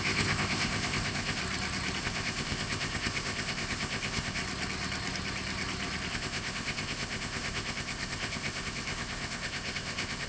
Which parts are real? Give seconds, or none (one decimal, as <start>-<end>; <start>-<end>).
1.4-2.0; 4.4-6.1